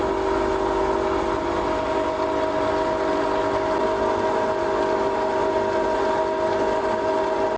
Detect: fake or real real